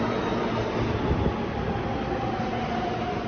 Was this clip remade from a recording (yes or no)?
no